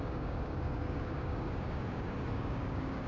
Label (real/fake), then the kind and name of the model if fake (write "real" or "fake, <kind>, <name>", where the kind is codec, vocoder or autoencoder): fake, codec, DAC